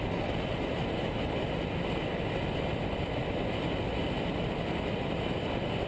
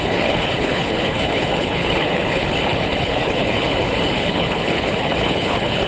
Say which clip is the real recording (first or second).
first